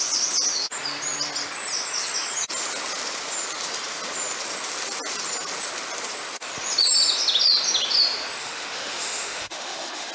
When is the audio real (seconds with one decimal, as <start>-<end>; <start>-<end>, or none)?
0.0-8.4